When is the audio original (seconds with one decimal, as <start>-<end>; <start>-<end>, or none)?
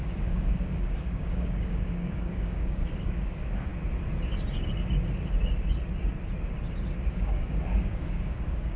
3.7-7.1